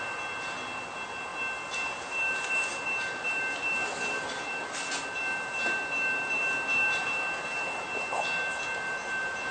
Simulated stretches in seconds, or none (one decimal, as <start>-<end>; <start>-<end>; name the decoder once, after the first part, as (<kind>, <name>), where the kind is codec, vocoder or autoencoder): none